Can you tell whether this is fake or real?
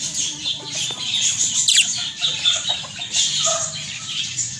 fake